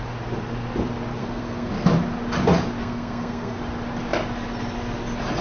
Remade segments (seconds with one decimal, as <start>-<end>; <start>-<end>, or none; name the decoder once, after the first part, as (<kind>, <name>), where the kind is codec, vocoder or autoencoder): 1.2-1.7 (codec, SNAC); 2.8-3.6